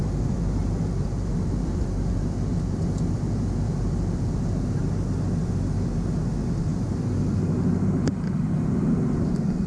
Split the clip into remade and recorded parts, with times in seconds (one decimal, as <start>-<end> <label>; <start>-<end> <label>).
0.0-4.8 remade; 4.8-9.7 recorded